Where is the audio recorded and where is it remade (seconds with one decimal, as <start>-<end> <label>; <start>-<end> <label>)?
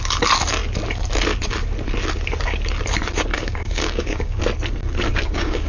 0.0-3.3 recorded; 3.3-4.4 remade; 4.4-5.1 recorded; 5.1-5.7 remade